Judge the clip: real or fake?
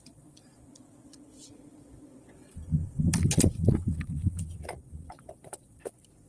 fake